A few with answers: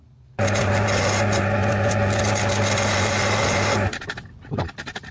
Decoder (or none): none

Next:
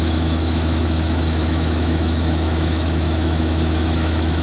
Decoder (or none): autoencoder, DAC-VAE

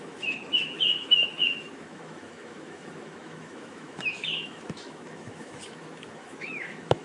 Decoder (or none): autoencoder, DAC-VAE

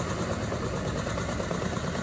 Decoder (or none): none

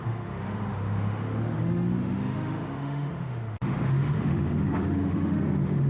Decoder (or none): autoencoder, DAC-VAE